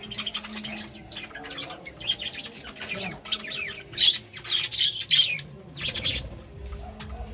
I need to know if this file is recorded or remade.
recorded